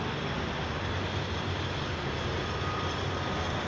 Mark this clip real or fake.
real